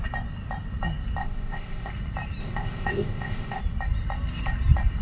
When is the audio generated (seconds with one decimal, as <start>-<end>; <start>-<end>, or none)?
1.2-1.9; 2.4-3.6